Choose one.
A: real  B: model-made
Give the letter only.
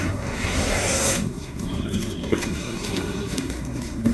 B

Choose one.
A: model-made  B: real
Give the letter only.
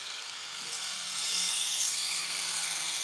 A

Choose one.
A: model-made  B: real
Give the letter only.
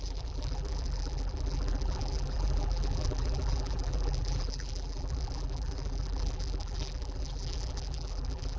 A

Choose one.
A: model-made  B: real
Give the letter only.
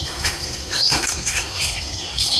A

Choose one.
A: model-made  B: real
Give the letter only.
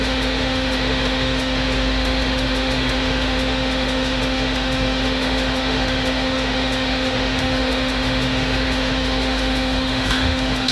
A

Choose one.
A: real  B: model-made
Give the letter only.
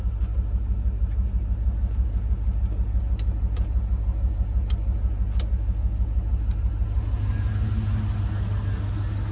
A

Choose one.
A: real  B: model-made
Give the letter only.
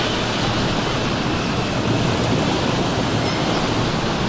A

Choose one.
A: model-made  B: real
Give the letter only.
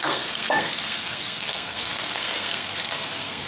A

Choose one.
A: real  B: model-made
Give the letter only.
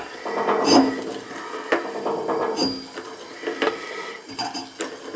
A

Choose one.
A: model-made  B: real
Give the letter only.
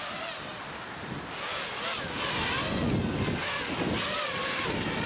B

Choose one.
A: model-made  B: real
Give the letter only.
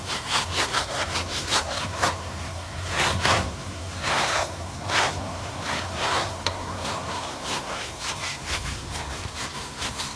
A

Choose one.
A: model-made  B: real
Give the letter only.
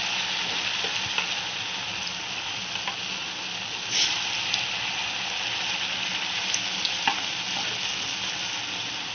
B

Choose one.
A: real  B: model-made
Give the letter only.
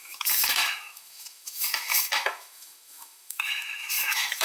B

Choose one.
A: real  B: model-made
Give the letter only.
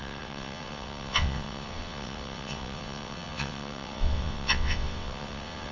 B